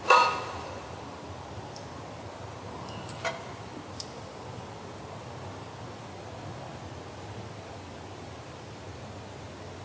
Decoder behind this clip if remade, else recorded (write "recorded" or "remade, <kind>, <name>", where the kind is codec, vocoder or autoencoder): recorded